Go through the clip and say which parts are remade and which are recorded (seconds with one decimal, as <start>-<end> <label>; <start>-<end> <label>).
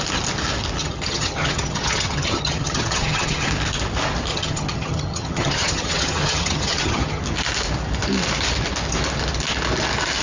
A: 0.0-0.8 recorded; 0.8-3.5 remade; 3.5-4.3 recorded; 4.3-7.2 remade; 7.2-10.2 recorded